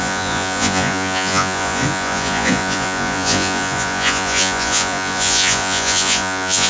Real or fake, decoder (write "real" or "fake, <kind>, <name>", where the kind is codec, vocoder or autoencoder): fake, vocoder, Vocos